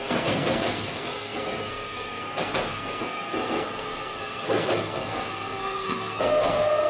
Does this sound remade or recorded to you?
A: remade